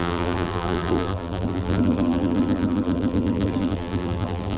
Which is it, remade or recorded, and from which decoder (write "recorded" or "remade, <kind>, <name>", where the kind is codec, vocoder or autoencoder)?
remade, vocoder, BigVGAN v2